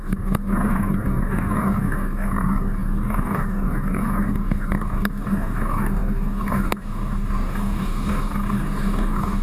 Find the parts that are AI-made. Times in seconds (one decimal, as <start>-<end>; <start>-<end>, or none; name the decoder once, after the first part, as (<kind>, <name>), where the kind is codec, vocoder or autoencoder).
0.0-9.4 (codec, DAC)